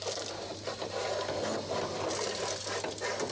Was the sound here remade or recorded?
recorded